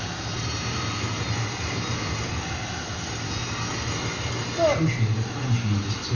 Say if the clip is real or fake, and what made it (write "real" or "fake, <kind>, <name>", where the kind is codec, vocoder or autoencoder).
real